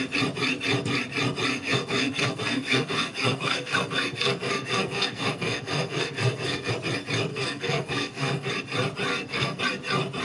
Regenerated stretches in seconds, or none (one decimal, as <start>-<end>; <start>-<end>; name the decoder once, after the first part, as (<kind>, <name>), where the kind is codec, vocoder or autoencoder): 1.5-6.7 (codec, SNAC); 7.3-8.5; 9.1-9.6